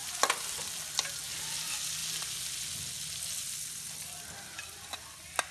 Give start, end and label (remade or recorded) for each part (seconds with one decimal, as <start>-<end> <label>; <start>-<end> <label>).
0.0-5.5 recorded